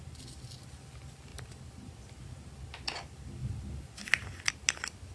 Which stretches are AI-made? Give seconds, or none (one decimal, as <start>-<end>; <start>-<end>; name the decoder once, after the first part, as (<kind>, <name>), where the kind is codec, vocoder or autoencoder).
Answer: none